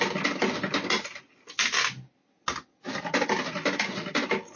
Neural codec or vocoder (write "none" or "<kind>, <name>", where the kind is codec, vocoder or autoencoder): none